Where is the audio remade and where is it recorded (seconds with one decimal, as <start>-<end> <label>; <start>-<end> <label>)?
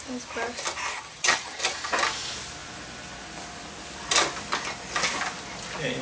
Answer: 0.0-0.9 recorded; 0.9-1.6 remade; 1.6-6.0 recorded